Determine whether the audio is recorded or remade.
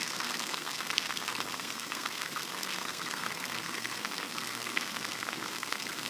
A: remade